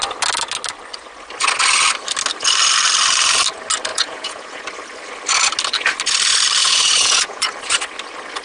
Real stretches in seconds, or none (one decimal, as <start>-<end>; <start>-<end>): 0.0-3.9; 4.6-6.6; 7.5-8.4